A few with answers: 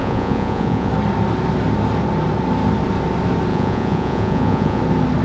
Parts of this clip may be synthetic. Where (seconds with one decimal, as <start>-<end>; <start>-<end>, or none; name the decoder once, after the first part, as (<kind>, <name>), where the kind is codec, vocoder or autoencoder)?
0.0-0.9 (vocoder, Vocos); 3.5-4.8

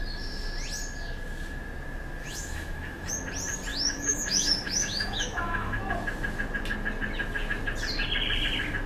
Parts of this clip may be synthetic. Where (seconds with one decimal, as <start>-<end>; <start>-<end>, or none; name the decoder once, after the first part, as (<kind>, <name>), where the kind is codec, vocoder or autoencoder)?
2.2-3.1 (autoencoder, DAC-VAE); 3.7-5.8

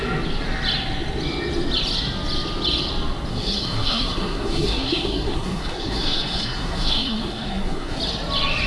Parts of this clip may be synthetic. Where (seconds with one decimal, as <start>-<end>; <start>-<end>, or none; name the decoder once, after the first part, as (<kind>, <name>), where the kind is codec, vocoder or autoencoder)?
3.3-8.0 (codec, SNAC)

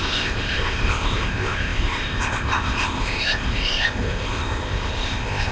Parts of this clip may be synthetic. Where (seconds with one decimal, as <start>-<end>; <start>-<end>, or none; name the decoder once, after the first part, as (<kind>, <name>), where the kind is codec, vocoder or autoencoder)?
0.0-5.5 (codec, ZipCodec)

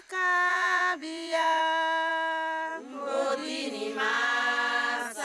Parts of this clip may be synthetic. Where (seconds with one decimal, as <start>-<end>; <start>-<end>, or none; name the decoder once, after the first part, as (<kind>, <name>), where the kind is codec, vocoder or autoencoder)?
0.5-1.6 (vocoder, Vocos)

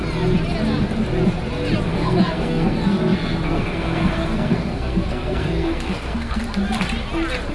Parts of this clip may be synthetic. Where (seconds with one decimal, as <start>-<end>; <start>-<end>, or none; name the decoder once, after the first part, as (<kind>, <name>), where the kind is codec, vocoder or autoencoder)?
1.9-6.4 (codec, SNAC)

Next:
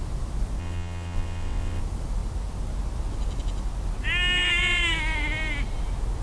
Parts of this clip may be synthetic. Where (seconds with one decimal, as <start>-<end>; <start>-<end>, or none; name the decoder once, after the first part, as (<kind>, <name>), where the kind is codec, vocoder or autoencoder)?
0.6-1.8 (vocoder, WaveNeXt)